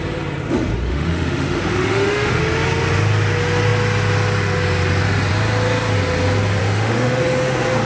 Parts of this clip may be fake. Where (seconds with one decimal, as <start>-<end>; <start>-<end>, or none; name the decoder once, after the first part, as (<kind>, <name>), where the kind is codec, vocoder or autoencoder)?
0.9-2.4 (autoencoder, DAC-VAE); 6.6-7.2